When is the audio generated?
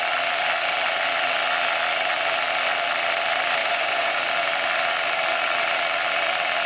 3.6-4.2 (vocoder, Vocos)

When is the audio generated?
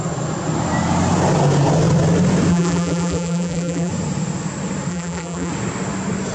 2.5-3.9 (vocoder, BigVGAN v2); 4.9-5.5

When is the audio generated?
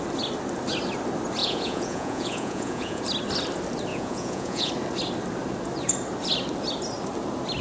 1.4-3.0 (vocoder, Vocos); 3.9-4.7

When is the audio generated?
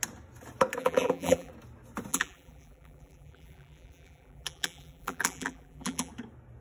0.8-1.5 (vocoder, BigVGAN v2); 2.1-6.1